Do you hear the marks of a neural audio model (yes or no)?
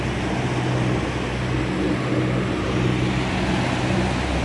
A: no